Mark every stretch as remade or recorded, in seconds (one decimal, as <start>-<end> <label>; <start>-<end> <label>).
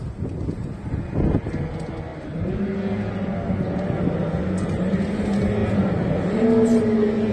0.0-7.3 recorded